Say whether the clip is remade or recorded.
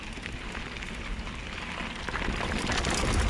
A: recorded